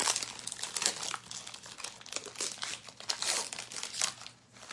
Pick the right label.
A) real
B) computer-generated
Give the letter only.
A